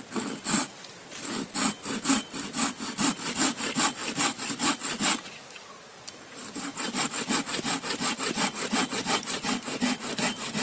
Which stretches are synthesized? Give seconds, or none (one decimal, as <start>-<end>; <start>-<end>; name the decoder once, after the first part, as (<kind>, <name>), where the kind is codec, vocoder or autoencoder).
1.2-2.0 (vocoder, BigVGAN v2)

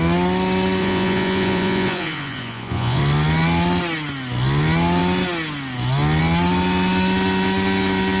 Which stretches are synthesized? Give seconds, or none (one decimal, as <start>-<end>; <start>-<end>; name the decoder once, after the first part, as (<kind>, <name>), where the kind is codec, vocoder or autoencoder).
0.8-3.0 (vocoder, Vocos)

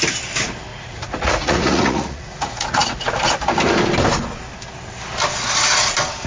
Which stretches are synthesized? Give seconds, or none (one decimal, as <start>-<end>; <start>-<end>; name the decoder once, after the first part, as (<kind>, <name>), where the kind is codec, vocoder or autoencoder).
0.7-3.3 (vocoder, Vocos)

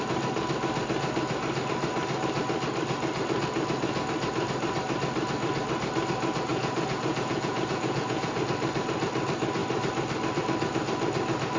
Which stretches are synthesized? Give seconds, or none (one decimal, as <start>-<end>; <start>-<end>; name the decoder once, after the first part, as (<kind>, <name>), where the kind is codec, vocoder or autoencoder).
6.5-8.4 (vocoder, Vocos)